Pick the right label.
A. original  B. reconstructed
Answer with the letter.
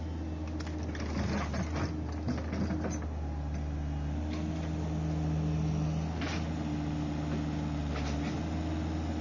A